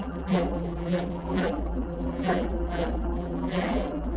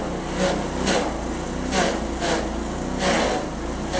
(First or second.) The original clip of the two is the second